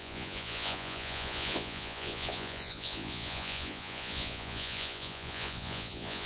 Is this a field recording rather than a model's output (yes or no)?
no